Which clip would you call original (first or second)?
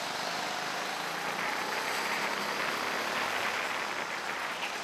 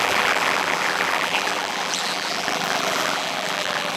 first